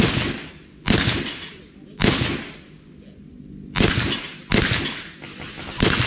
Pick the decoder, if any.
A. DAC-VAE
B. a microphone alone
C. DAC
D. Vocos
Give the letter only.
B